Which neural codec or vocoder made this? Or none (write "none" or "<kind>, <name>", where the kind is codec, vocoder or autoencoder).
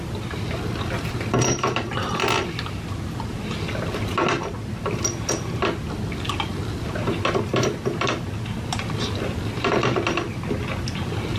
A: none